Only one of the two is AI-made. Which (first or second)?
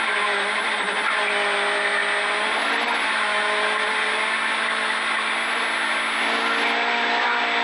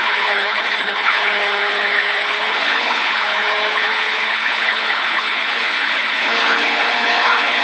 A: second